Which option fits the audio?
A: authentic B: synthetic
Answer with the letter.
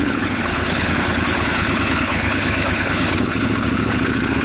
B